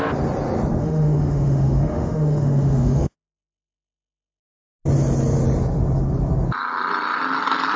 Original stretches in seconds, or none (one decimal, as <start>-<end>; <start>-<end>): 0.0-0.8; 4.4-7.8